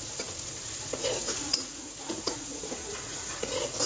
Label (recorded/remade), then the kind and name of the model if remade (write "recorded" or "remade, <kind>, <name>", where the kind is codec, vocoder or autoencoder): remade, vocoder, Vocos